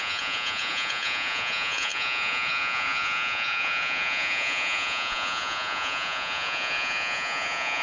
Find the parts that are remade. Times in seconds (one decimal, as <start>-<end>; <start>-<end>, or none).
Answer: 0.0-7.8